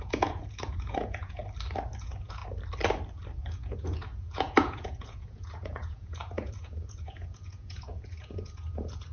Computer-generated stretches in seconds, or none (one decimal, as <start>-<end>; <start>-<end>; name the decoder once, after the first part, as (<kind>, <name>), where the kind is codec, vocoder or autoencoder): 0.0-1.4 (vocoder, Vocos); 2.0-2.4; 3.4-9.1